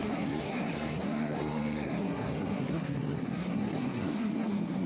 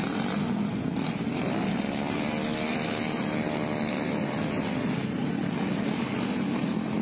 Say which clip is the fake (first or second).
first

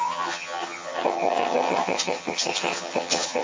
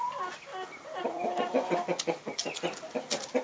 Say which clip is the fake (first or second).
first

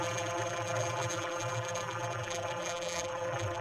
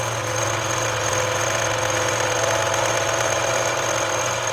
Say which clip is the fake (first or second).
first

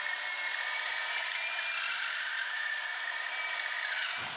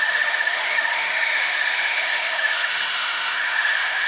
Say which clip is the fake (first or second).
second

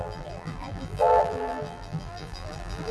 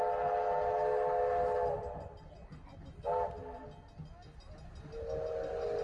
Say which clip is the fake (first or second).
first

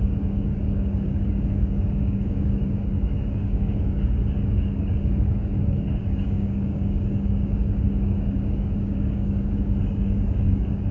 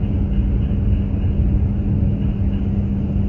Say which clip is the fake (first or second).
first